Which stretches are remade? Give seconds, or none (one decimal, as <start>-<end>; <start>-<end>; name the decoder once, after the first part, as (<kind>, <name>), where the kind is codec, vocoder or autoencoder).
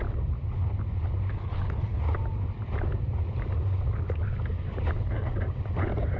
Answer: 1.3-2.0 (codec, HILCodec)